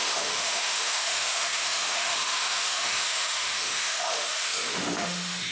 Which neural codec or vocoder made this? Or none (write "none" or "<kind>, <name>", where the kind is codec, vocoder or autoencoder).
autoencoder, DAC-VAE